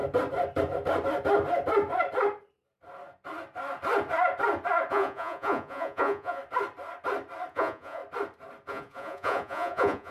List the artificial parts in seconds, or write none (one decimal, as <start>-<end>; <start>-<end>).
4.9-6.4; 7.5-8.0; 8.7-10.1